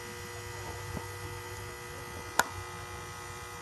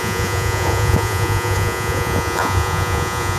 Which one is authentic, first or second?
first